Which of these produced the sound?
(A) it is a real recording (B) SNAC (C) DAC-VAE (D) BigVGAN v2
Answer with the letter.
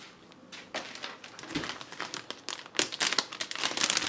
A